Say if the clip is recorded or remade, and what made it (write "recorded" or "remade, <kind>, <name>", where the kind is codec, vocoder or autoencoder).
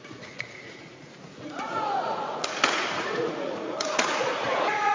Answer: remade, vocoder, Vocos